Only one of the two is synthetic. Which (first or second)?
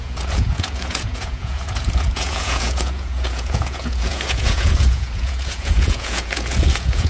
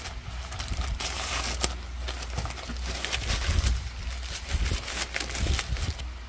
first